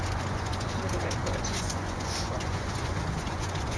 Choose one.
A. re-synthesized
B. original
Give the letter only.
A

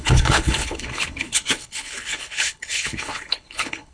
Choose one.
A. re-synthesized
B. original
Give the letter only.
A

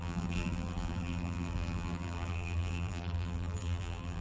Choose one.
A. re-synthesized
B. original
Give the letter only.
A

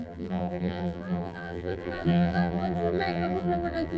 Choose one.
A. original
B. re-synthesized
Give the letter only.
B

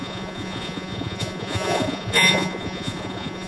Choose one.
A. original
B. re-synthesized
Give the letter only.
B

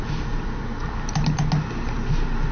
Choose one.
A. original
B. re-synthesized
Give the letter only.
A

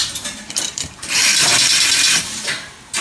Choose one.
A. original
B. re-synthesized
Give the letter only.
B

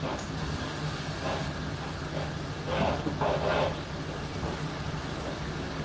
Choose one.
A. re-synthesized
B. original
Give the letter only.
B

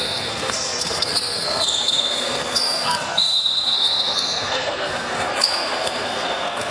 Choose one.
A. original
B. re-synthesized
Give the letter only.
B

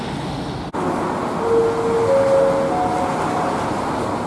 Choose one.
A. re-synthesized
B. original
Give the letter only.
B